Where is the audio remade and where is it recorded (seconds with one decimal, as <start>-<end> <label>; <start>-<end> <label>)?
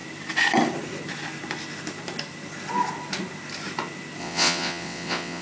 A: 0.0-4.2 recorded; 4.2-5.4 remade